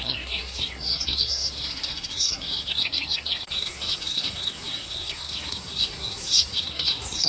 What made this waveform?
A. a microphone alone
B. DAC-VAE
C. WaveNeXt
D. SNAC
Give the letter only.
D